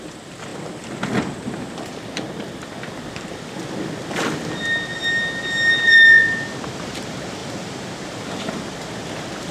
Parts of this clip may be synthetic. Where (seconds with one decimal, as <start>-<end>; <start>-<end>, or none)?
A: none